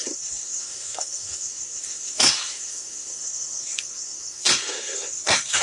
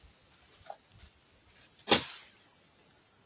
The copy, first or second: first